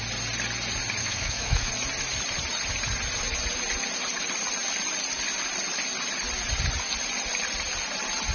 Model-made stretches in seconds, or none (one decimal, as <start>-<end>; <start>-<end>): 1.0-1.7